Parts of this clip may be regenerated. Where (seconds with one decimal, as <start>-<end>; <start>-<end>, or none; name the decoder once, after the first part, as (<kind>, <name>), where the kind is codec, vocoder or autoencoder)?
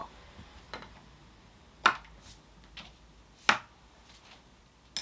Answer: none